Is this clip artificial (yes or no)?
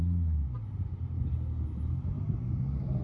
no